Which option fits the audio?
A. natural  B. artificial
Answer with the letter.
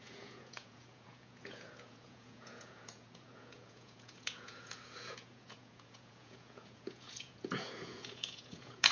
B